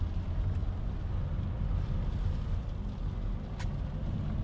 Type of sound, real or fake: real